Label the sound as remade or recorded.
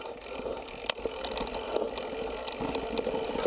recorded